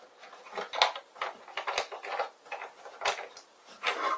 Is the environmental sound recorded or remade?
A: recorded